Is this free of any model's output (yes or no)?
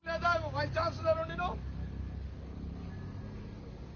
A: yes